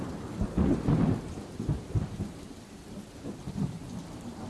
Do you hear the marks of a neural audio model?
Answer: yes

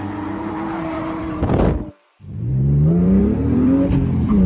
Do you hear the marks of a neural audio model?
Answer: yes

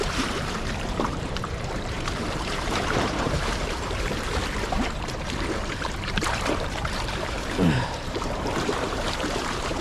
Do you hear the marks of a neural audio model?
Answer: yes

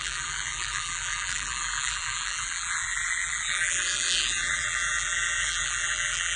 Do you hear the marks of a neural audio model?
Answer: yes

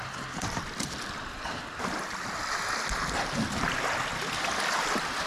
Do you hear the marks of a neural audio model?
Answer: no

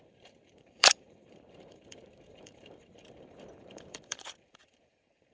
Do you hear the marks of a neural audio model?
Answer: yes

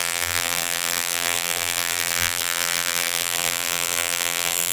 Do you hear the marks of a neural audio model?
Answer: yes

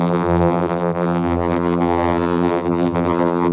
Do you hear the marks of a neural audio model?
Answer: yes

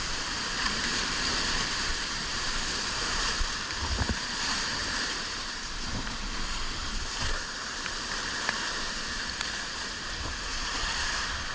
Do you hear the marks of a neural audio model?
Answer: yes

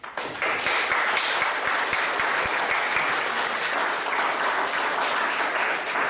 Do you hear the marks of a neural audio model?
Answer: no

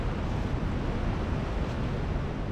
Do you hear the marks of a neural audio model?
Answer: no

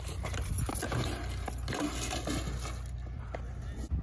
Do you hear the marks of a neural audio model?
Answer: no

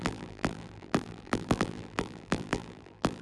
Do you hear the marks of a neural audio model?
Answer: yes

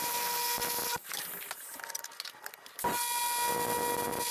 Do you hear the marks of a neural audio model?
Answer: no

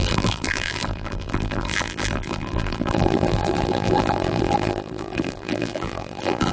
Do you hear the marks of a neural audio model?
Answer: yes